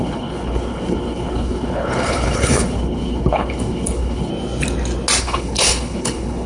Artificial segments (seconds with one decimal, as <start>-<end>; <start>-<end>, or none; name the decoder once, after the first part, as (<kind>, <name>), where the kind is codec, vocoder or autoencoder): 0.0-4.3 (codec, HILCodec); 5.2-6.5

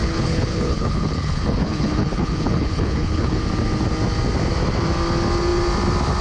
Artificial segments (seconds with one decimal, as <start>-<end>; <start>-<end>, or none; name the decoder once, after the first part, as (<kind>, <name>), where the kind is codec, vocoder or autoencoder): 0.0-3.4 (codec, HILCodec)